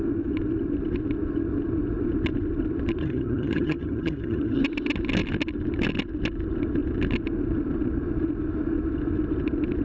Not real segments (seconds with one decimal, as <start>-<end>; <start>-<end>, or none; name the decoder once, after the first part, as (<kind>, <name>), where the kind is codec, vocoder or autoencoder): 3.0-4.6 (vocoder, HiFi-GAN)